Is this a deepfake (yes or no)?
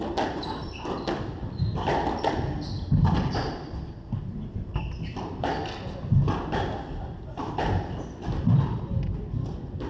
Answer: no